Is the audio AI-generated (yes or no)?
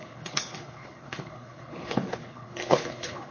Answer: yes